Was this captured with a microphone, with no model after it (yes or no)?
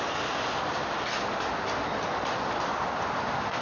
no